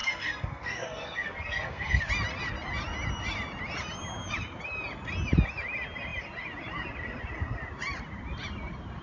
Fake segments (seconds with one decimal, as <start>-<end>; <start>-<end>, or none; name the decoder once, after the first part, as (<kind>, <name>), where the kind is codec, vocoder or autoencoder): 0.0-2.0 (codec, SNAC)

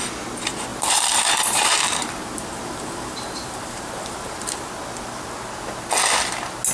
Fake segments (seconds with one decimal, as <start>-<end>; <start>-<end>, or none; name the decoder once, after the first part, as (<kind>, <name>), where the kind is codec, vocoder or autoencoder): 0.7-4.7 (vocoder, BigVGAN v2)

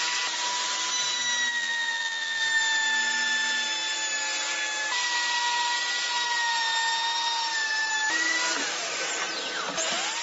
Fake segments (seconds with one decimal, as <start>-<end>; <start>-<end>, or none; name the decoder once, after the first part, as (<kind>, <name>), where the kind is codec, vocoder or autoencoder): 1.5-2.4 (vocoder, BigVGAN v2)

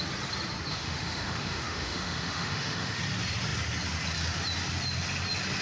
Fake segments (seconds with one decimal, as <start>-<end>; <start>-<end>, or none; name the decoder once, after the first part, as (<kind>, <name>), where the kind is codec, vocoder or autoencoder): 0.7-3.0 (autoencoder, DAC-VAE)

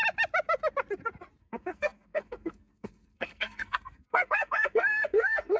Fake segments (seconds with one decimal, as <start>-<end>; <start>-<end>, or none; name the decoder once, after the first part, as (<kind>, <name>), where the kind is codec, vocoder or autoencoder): 1.4-5.6 (codec, SNAC)